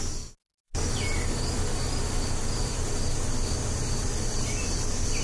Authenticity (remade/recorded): recorded